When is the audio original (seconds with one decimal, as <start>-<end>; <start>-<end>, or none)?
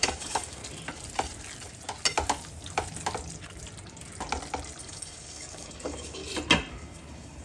0.6-4.8; 6.2-6.7